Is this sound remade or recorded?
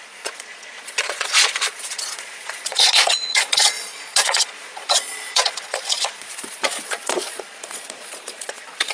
remade